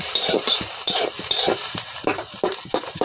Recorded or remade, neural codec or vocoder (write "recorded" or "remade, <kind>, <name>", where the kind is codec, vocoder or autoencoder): remade, vocoder, BigVGAN v2